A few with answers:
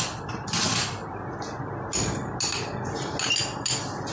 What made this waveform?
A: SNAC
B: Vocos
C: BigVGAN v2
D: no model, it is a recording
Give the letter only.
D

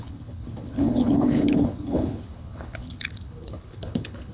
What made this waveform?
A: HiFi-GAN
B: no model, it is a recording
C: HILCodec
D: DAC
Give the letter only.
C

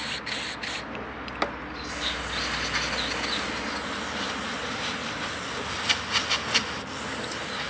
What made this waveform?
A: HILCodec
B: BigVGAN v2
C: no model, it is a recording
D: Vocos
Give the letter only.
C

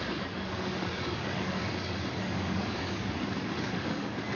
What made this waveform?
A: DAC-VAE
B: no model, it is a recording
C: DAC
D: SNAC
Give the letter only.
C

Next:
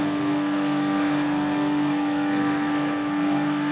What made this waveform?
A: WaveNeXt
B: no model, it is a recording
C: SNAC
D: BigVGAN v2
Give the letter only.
C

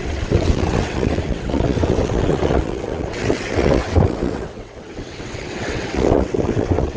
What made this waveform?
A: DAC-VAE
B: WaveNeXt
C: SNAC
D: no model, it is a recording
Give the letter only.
B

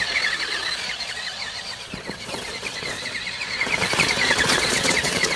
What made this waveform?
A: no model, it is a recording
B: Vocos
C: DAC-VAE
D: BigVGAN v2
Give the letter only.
B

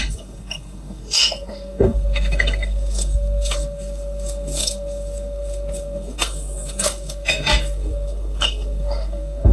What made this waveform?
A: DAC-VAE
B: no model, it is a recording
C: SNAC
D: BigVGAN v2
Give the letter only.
C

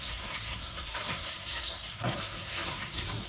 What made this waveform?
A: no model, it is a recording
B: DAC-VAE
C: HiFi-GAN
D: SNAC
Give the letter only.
D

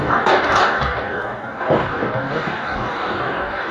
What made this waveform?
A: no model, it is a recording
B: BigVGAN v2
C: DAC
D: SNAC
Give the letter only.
C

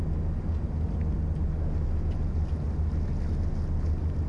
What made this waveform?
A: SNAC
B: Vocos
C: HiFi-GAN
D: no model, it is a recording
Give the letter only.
D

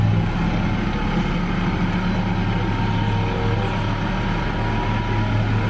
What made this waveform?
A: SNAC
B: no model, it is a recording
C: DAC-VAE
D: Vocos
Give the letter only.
B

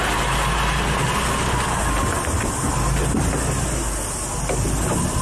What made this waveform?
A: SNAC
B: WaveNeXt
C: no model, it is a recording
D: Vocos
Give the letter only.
C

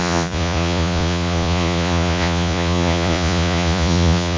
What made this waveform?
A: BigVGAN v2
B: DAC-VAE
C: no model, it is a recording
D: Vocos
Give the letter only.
D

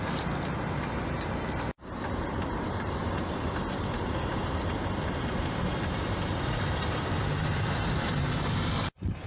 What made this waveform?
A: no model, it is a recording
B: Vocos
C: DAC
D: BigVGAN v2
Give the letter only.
D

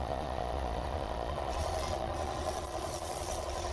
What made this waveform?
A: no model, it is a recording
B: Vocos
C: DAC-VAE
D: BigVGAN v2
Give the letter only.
B